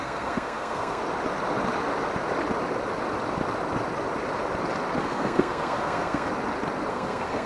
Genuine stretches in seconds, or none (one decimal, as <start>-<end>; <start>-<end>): 1.0-5.0; 6.3-6.9